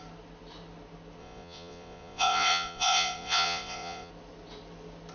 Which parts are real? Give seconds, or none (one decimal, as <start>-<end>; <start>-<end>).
0.0-1.2; 4.1-5.1